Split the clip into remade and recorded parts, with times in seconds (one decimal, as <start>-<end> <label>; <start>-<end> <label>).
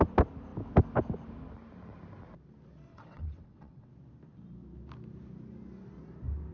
0.0-2.9 recorded; 2.9-3.9 remade; 3.9-6.5 recorded